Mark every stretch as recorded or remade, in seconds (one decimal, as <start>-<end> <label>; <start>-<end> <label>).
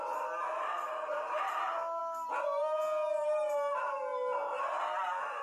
0.0-5.4 recorded